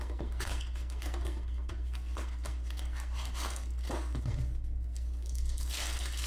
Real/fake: fake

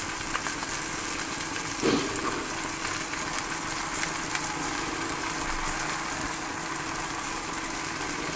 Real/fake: real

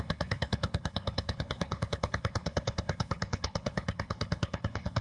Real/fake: fake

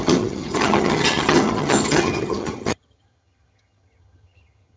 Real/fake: fake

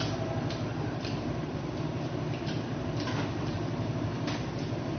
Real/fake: fake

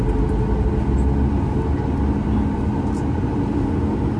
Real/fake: real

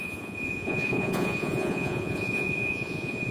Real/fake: fake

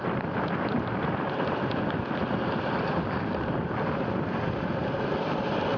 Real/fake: fake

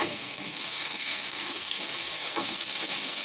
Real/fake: fake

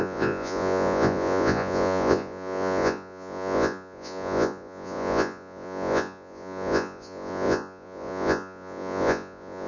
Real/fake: fake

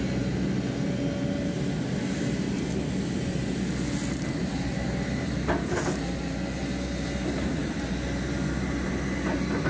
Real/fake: real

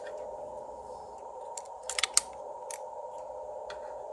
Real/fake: real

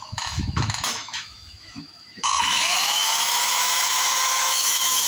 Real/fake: fake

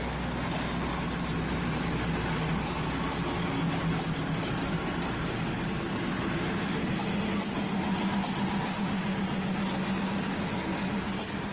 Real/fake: real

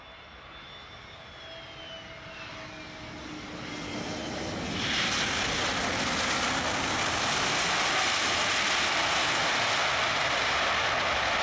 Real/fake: real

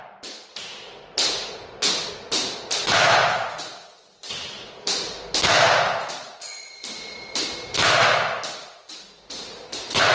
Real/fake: real